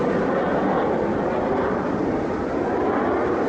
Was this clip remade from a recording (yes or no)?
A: no